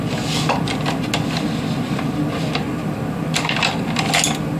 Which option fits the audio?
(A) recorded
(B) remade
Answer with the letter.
A